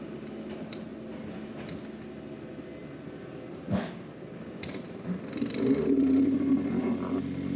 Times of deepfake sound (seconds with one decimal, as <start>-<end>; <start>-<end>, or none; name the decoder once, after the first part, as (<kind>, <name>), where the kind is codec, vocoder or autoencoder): none